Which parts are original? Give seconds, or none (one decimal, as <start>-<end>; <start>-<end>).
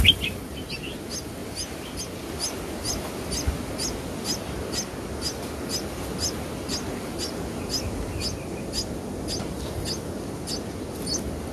0.0-11.5